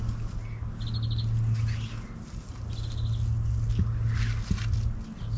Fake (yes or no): no